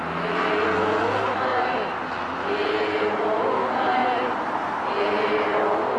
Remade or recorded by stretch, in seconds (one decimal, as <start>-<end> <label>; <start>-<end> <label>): 0.0-6.0 recorded